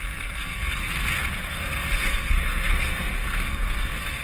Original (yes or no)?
no